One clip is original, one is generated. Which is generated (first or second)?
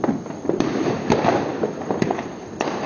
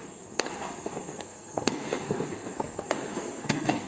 second